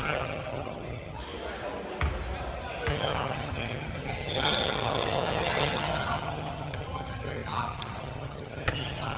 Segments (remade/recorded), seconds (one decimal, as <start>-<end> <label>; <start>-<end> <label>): 0.0-1.2 remade; 1.2-2.9 recorded; 2.9-9.2 remade